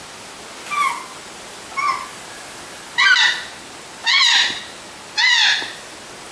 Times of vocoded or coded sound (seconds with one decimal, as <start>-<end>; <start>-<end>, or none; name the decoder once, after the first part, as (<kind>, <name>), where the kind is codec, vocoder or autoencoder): none